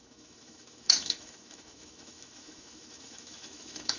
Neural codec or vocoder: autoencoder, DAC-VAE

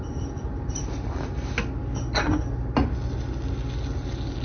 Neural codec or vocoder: none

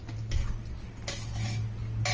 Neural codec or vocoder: none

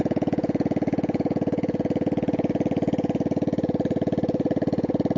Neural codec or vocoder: vocoder, Vocos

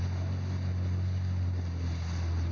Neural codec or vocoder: none